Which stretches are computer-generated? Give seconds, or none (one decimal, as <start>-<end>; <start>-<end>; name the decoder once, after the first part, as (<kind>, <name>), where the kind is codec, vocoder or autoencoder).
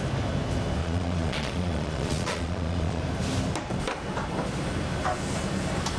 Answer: 0.8-3.0 (vocoder, Vocos)